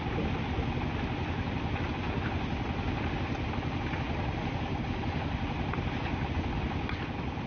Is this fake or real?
real